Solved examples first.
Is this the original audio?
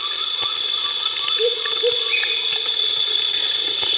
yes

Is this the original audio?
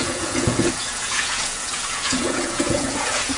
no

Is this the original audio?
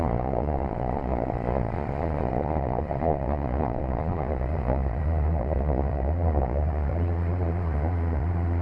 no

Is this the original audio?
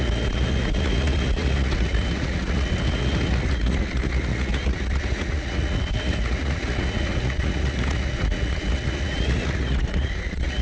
no